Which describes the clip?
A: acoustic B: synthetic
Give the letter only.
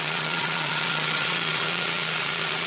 B